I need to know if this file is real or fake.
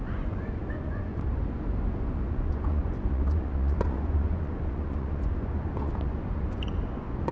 fake